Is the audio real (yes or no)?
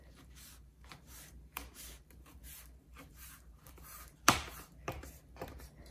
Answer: no